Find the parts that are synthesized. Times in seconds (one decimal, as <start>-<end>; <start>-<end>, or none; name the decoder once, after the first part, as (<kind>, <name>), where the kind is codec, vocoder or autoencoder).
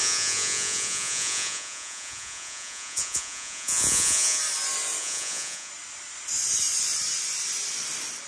0.0-4.4 (vocoder, Vocos); 5.0-5.7